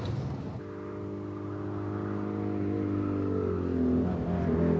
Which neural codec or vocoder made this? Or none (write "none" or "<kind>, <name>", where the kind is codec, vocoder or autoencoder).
none